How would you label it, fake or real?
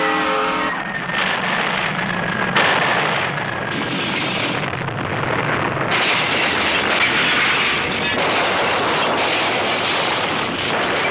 real